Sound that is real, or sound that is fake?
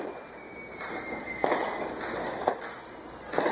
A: real